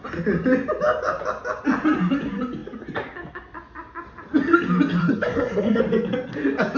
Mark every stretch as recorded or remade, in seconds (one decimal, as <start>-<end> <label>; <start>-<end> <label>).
0.0-5.0 recorded; 5.0-5.8 remade; 5.8-6.8 recorded